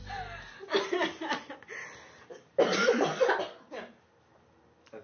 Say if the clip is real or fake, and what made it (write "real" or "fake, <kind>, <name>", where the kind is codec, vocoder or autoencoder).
real